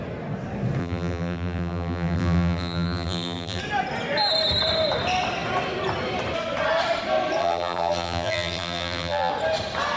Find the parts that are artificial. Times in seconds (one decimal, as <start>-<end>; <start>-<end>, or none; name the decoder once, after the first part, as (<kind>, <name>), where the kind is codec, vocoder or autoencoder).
0.8-3.6 (vocoder, BigVGAN v2); 7.4-9.3